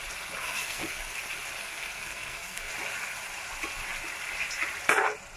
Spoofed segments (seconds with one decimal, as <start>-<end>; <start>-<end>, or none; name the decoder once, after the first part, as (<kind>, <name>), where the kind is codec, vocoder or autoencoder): 0.4-1.1 (codec, SNAC); 1.6-2.7